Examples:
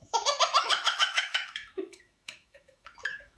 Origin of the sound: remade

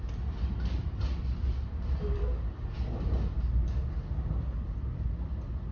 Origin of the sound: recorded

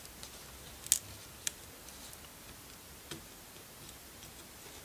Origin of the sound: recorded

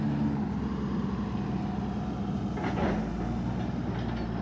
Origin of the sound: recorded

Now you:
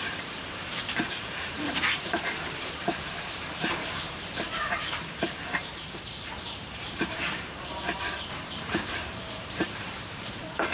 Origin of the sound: remade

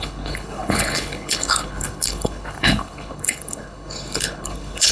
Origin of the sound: remade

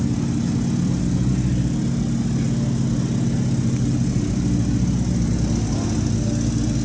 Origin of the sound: recorded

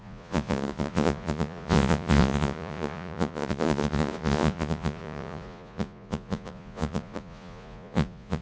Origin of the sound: remade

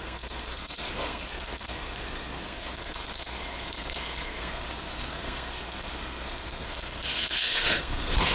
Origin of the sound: remade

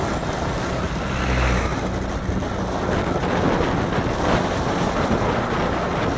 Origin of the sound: recorded